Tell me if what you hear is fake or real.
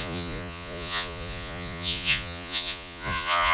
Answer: fake